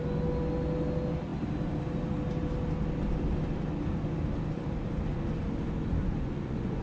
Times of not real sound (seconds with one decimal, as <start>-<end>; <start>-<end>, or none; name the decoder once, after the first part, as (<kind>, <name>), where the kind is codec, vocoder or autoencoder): 6.0-6.8 (vocoder, Vocos)